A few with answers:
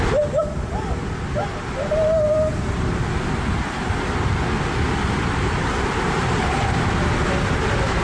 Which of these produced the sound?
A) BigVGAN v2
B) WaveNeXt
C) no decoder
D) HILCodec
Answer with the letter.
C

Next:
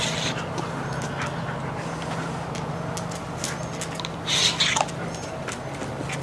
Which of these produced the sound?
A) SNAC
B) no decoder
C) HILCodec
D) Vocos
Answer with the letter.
B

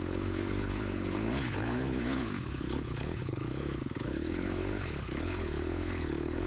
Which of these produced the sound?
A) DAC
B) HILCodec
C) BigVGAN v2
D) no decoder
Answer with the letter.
B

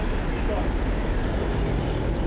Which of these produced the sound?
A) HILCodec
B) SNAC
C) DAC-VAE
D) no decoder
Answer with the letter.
D